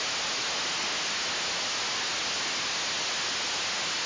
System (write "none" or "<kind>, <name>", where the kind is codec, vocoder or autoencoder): none